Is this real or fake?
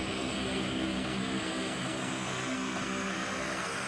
fake